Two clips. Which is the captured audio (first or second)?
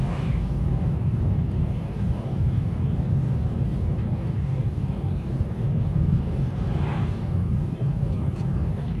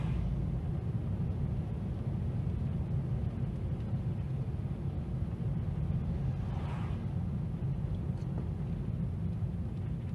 second